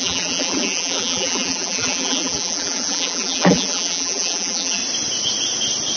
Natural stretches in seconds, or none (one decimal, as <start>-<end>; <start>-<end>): 4.8-6.0